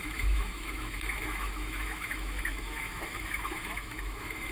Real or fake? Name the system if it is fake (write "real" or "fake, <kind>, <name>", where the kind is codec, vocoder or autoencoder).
fake, autoencoder, DAC-VAE